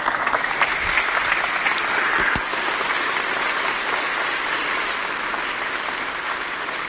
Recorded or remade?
recorded